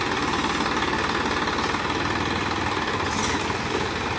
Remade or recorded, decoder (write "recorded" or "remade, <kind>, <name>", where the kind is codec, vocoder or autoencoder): recorded